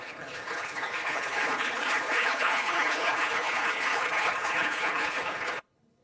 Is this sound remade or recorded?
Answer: remade